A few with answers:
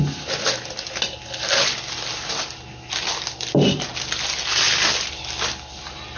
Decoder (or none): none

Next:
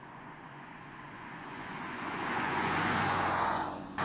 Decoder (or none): vocoder, Vocos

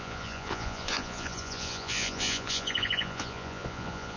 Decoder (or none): vocoder, Vocos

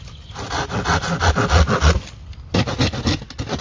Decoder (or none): none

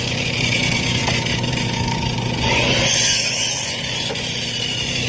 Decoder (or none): vocoder, Vocos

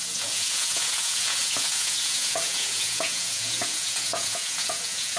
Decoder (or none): vocoder, Vocos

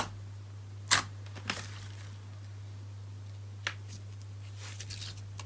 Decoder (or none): none